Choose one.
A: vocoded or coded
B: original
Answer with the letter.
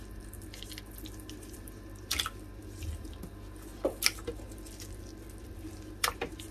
B